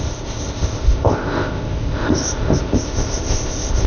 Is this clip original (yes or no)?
no